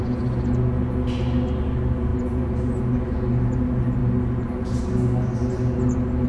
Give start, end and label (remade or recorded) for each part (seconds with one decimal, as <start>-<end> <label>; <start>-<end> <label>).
0.0-6.3 recorded